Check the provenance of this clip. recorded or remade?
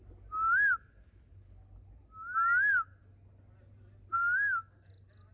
recorded